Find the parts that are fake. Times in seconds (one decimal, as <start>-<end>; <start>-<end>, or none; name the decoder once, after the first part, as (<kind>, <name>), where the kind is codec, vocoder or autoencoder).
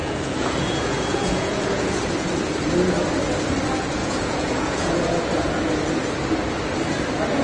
0.0-2.0 (vocoder, Vocos); 4.0-4.9